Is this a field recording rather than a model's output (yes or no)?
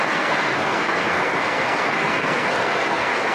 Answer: no